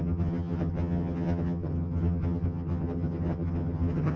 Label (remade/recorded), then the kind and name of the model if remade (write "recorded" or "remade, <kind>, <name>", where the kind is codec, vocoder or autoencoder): remade, vocoder, HiFi-GAN